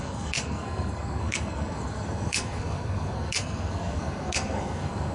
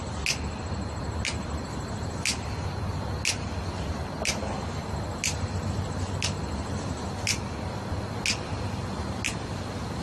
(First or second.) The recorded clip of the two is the second